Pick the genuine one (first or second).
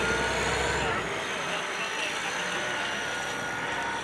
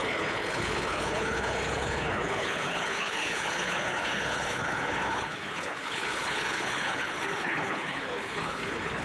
first